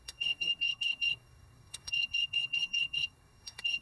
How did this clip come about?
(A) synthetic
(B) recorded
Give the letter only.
A